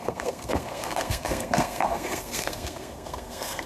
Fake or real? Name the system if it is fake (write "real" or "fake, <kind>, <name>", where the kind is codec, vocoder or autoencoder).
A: fake, codec, SNAC